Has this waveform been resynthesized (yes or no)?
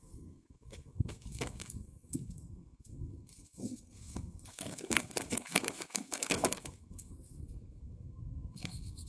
yes